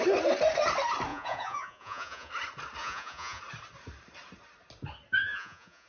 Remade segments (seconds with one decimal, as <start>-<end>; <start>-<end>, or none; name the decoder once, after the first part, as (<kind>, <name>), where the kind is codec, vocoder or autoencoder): 1.1-2.3 (vocoder, Vocos); 2.8-3.4; 5.2-5.9